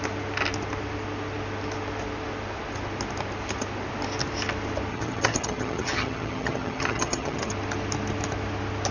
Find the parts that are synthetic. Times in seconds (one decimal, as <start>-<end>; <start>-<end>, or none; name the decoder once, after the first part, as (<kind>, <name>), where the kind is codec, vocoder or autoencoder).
4.9-7.5 (vocoder, HiFi-GAN)